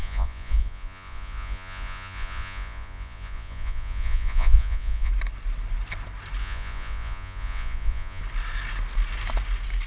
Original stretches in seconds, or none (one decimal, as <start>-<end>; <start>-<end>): 5.1-6.4; 8.2-9.9